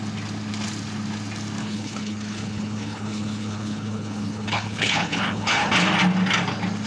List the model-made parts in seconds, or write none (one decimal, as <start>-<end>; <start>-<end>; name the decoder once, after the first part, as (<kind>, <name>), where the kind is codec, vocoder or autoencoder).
1.6-5.7 (codec, HILCodec)